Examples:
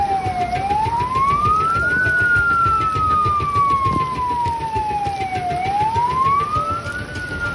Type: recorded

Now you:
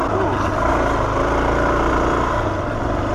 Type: recorded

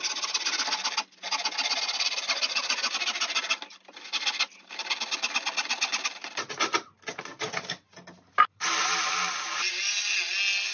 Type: recorded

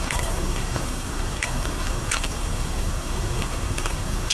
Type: remade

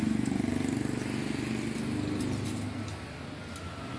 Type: recorded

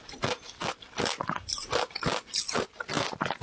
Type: recorded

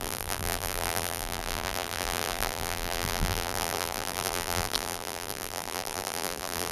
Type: remade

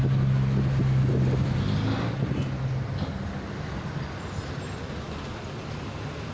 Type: recorded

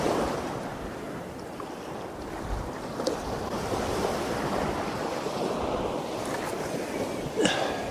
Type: recorded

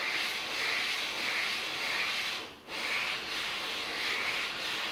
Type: recorded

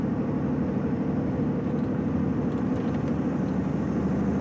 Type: recorded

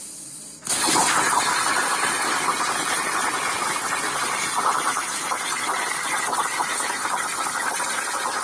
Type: recorded